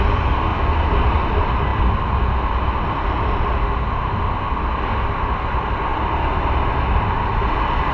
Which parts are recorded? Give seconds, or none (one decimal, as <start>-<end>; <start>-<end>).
0.0-7.9